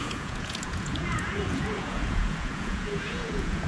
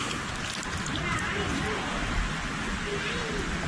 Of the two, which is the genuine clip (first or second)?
second